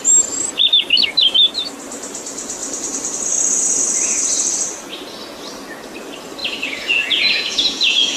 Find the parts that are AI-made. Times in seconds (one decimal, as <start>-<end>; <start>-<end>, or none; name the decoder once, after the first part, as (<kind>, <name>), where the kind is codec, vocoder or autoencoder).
6.4-8.2 (vocoder, Vocos)